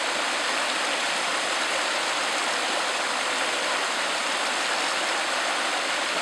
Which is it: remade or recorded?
recorded